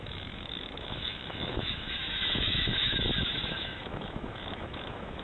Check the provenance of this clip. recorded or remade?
remade